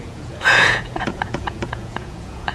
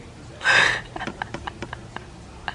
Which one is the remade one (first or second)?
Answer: first